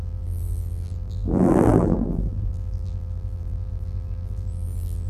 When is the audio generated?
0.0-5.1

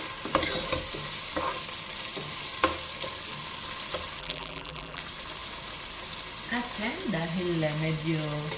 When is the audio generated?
4.2-5.0

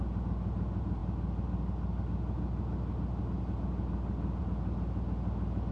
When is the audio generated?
none

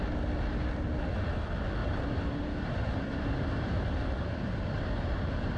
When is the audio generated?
1.8-5.6

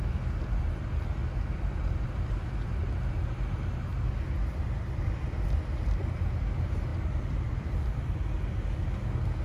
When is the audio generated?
3.9-5.6; 6.9-8.0

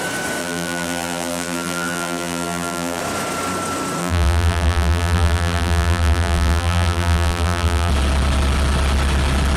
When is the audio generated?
0.4-3.0; 4.0-7.9

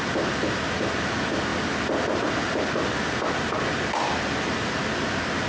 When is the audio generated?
1.5-4.8